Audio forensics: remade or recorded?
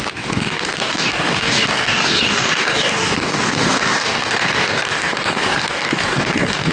remade